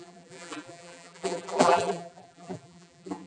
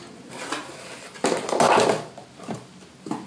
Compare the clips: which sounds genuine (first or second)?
second